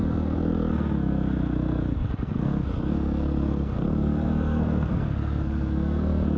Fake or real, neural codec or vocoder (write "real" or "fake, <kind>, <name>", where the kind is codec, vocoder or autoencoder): fake, codec, SNAC